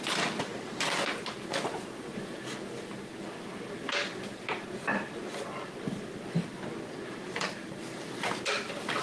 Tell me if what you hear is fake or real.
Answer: real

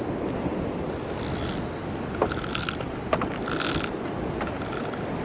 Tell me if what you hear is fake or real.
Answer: real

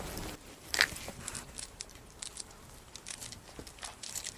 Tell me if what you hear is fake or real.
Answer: fake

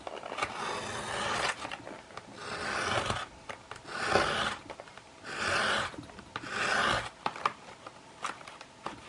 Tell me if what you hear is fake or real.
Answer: real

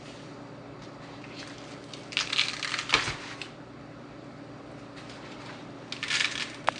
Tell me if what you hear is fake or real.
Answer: real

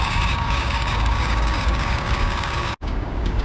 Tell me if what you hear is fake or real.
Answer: fake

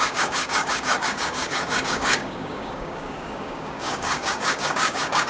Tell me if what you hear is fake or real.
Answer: fake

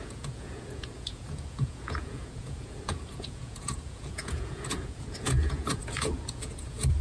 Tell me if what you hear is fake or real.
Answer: fake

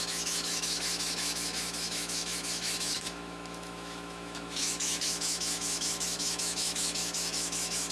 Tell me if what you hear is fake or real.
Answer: fake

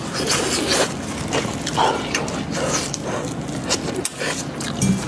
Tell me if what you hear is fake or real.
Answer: real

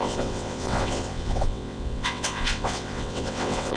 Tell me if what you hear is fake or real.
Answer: fake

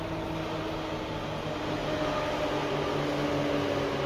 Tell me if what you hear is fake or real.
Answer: real